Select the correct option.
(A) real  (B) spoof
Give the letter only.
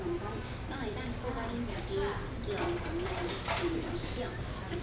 A